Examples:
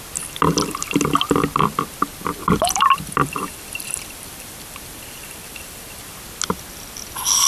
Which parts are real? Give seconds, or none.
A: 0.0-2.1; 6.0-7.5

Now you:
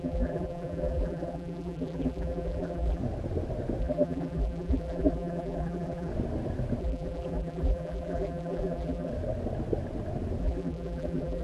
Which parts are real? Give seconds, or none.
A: 3.0-3.8; 6.1-6.8; 9.1-10.4

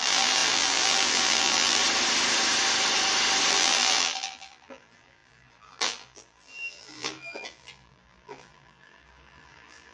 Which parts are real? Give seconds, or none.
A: 1.8-3.5

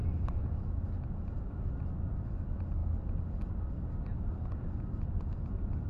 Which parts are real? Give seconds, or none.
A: 0.6-5.9

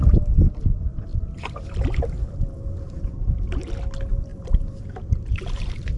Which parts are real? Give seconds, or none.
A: 0.0-1.1; 2.0-4.3